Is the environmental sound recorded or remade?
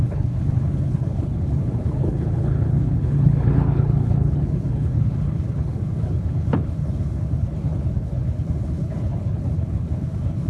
remade